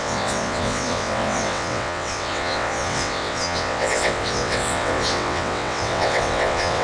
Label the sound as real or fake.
fake